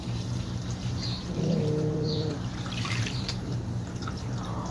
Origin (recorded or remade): remade